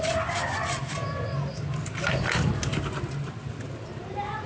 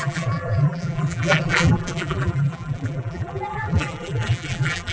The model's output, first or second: second